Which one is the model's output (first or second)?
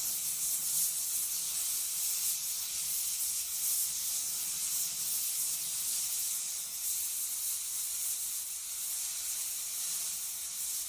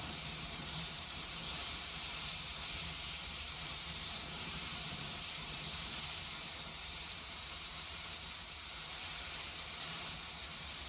second